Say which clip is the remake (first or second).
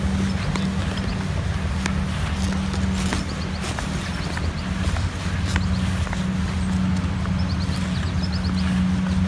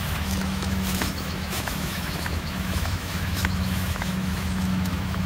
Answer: second